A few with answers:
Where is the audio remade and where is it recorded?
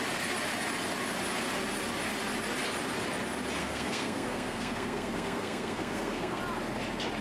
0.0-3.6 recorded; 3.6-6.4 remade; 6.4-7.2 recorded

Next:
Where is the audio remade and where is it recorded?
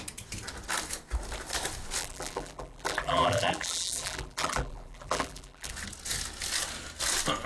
0.0-2.0 recorded; 2.0-5.7 remade; 5.7-7.5 recorded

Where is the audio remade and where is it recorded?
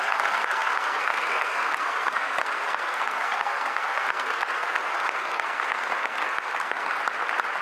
0.0-7.0 remade; 7.0-7.6 recorded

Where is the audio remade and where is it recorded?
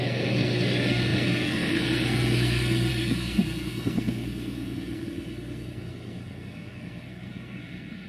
0.0-8.1 remade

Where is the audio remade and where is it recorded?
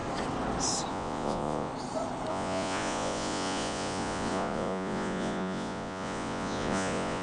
0.0-0.9 recorded; 0.9-1.7 remade; 1.7-2.3 recorded; 2.3-7.2 remade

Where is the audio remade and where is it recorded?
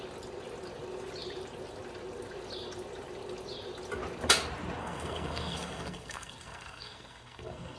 0.0-4.8 recorded; 4.8-7.8 remade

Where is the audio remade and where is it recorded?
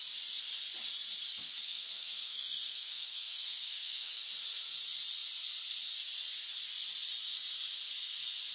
0.0-1.7 recorded; 1.7-4.2 remade; 4.2-8.5 recorded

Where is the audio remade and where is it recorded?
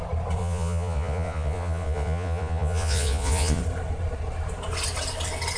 0.0-0.4 recorded; 0.4-3.6 remade; 3.6-5.6 recorded